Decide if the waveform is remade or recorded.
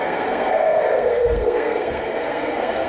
remade